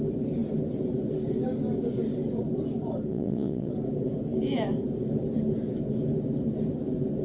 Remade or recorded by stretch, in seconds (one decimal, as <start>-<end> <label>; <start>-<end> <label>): 0.0-3.1 recorded; 3.1-3.7 remade; 3.7-7.2 recorded